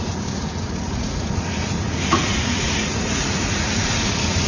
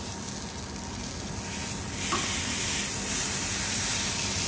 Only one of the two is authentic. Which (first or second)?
second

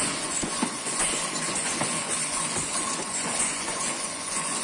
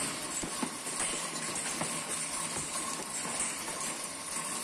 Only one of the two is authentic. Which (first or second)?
second